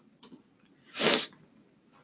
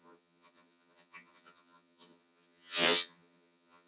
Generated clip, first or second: second